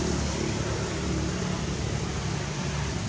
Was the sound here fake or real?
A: real